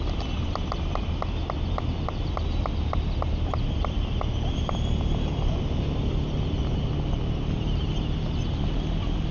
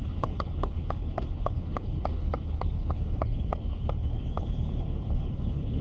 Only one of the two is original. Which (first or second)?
first